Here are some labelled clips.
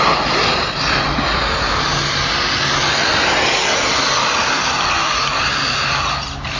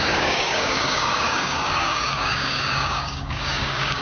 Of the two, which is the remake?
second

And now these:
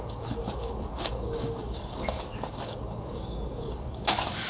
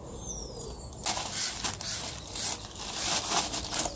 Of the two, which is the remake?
first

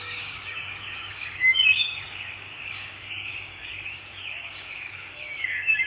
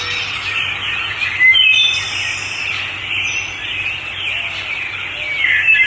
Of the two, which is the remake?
first